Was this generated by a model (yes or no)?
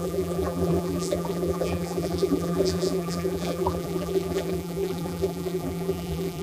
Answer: yes